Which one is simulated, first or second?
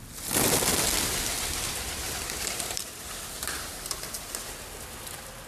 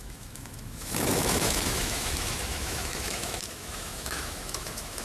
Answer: second